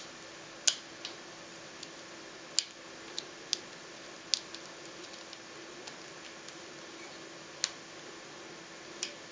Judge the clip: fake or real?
real